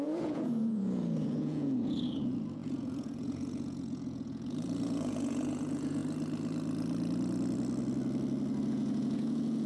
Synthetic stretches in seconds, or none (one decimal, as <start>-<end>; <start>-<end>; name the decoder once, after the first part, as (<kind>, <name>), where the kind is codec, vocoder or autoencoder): 0.0-6.0 (vocoder, Vocos); 8.7-9.7